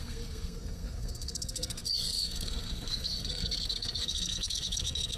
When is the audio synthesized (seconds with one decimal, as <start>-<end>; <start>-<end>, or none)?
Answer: 0.0-5.2